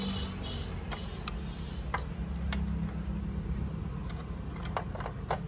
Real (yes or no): yes